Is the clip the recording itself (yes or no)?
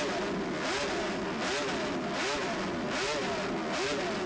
yes